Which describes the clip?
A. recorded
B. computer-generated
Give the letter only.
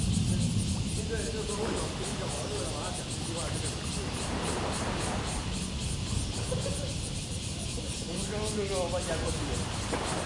A